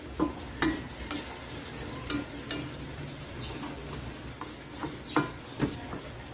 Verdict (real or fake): real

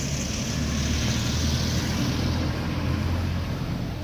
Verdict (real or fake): real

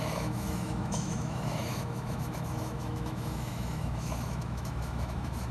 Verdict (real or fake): fake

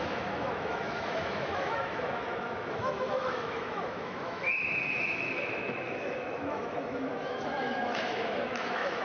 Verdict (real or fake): fake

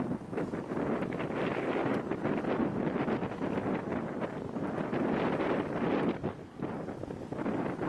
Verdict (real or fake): real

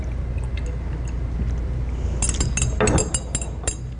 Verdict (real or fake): real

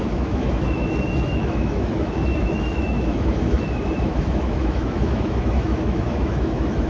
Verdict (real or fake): fake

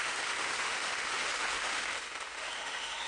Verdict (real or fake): fake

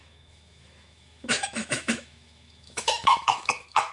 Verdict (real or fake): fake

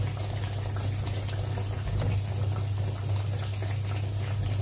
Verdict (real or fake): real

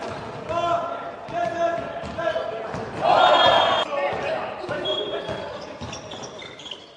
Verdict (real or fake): real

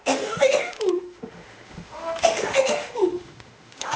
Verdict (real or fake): fake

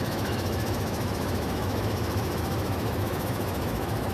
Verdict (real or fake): fake